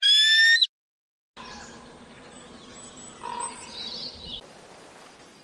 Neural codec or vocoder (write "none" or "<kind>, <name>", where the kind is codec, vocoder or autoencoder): none